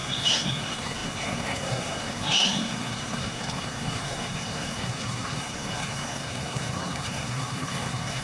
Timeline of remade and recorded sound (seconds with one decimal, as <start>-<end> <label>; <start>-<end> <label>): 0.0-8.2 remade